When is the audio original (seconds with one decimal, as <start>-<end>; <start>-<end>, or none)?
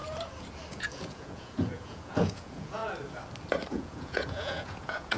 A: 0.0-0.7; 2.8-3.7